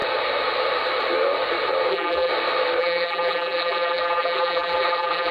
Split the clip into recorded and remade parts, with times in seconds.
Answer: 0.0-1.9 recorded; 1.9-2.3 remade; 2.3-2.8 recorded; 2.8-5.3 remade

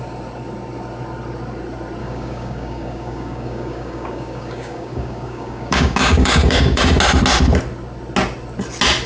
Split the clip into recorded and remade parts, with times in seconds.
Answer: 0.0-2.0 recorded; 2.0-6.8 remade; 6.8-9.1 recorded

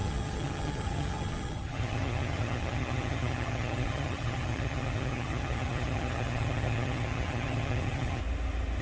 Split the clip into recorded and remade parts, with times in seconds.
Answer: 0.0-8.2 remade; 8.2-8.8 recorded

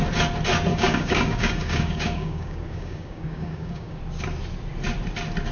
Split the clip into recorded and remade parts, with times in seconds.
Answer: 0.0-0.7 recorded; 0.7-4.0 remade; 4.0-5.5 recorded

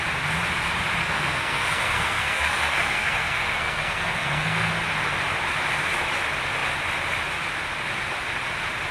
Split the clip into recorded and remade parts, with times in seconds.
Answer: 0.0-1.0 recorded; 1.0-4.7 remade; 4.7-8.9 recorded